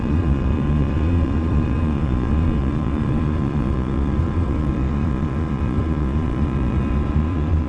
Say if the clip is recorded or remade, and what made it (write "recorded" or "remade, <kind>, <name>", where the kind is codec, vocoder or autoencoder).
remade, vocoder, Vocos